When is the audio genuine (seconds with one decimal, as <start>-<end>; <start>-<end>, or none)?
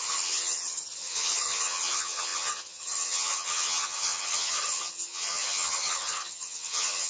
none